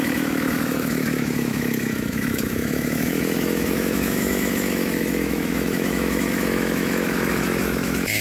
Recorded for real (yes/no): no